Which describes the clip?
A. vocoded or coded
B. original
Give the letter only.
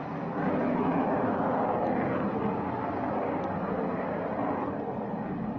B